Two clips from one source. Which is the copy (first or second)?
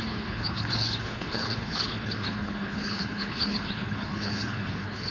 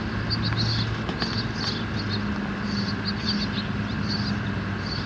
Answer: first